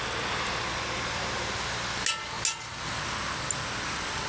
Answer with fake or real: real